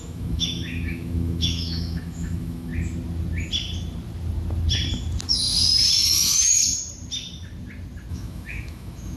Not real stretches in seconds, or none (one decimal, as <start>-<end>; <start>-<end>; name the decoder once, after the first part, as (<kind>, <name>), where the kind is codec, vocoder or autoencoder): 0.0-2.7 (autoencoder, DAC-VAE); 6.1-6.6; 8.1-9.2